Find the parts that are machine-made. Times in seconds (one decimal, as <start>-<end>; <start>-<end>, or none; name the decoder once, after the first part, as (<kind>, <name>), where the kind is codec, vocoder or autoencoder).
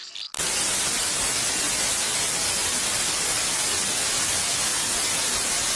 none